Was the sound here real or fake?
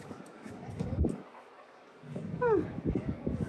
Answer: fake